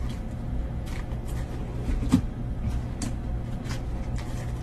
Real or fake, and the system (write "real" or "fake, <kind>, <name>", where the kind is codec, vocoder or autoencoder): real